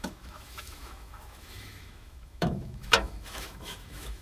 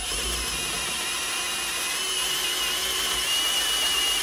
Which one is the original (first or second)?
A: second